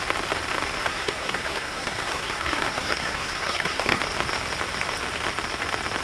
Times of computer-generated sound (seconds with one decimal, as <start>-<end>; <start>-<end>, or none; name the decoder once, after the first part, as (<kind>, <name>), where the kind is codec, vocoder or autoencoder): 0.8-4.0 (codec, SNAC)